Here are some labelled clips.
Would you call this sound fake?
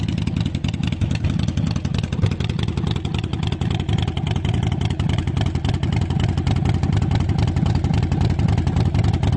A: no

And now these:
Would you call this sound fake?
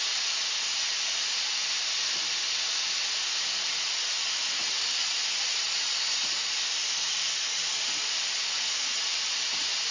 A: no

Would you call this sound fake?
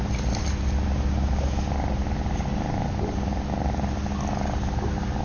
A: no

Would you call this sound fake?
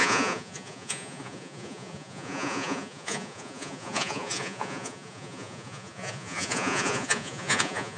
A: yes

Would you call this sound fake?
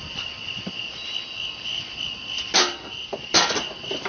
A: yes